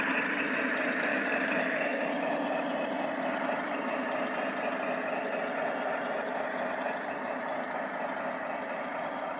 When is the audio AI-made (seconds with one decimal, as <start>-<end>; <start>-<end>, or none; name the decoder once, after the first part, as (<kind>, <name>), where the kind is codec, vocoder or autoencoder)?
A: 1.1-2.1 (codec, DAC)